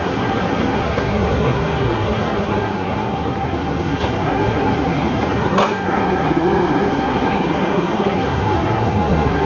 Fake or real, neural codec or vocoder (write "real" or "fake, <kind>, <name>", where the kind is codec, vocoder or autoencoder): fake, codec, SNAC